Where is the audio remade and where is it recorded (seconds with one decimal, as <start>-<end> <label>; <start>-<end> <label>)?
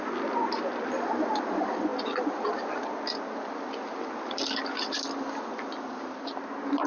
0.0-6.9 recorded